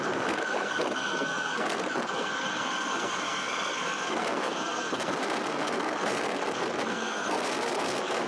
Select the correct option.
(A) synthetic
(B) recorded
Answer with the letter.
A